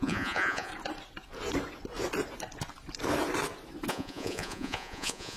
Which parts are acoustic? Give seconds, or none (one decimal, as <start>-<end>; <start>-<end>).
0.7-3.9